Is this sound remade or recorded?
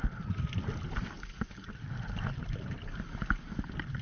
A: recorded